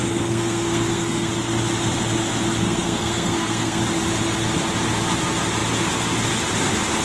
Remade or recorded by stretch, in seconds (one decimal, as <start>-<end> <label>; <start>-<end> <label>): 0.0-1.3 remade; 1.3-2.6 recorded; 2.6-3.8 remade; 3.8-7.0 recorded